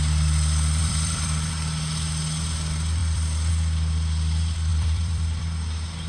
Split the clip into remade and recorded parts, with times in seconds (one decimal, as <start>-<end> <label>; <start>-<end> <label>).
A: 0.0-0.8 recorded; 0.8-1.5 remade; 1.5-3.0 recorded; 3.0-3.5 remade; 3.5-4.7 recorded; 4.7-5.4 remade; 5.4-6.1 recorded